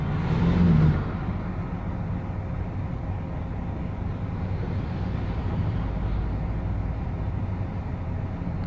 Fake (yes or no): no